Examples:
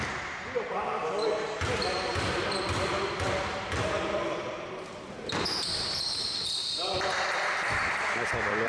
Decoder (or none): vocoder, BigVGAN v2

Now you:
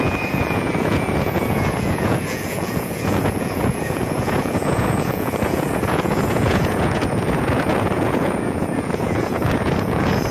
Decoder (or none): vocoder, Vocos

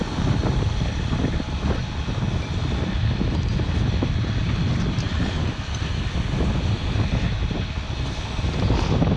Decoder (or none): none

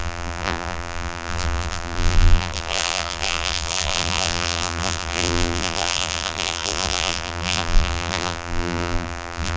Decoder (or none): vocoder, BigVGAN v2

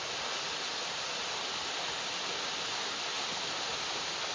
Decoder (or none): none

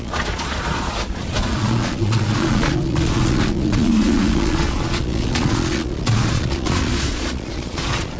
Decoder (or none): vocoder, Vocos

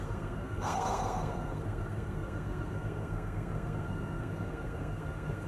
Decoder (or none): codec, SNAC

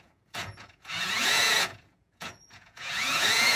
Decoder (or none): vocoder, Vocos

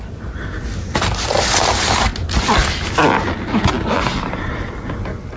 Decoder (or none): none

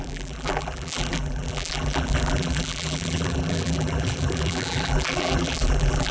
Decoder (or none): vocoder, BigVGAN v2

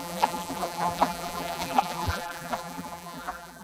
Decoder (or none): vocoder, BigVGAN v2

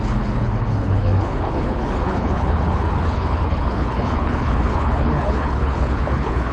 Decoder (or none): codec, HILCodec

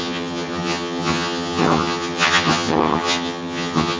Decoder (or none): vocoder, HiFi-GAN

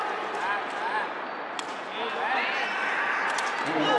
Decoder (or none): none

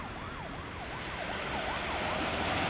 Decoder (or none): none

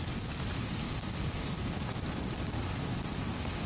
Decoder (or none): none